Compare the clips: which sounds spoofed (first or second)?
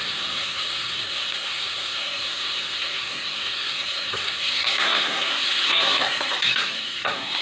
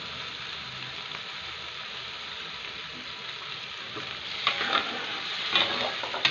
first